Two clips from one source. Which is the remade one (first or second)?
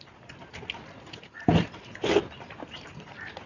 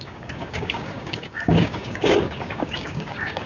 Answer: second